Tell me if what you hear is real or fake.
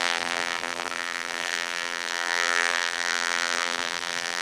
fake